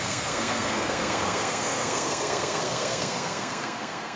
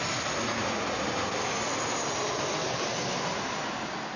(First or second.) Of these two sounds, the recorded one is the second